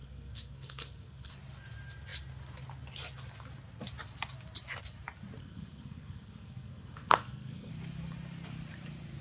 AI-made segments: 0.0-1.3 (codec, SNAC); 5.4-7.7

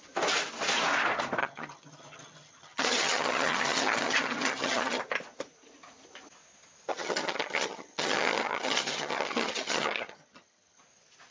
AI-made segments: 1.4-5.0 (vocoder, HiFi-GAN); 6.9-10.8

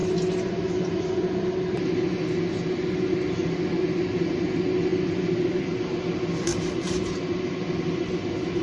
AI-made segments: none